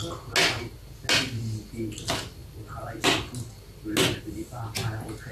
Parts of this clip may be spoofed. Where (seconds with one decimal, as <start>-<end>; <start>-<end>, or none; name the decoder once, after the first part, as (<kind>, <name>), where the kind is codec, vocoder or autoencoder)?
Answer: none